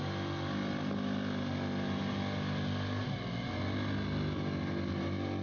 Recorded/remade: recorded